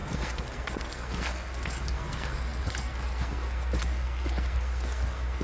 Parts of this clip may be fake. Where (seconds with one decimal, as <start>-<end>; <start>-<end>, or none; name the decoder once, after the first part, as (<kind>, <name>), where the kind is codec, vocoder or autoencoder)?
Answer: 0.0-5.4 (codec, SNAC)